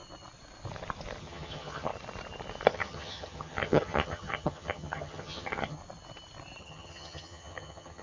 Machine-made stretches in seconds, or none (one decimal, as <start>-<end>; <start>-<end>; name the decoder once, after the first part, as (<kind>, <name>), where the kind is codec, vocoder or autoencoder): 1.2-1.9 (vocoder, HiFi-GAN); 2.7-5.8; 6.6-8.0